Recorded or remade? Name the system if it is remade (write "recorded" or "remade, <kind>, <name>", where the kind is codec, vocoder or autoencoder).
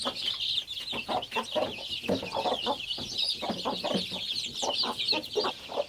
recorded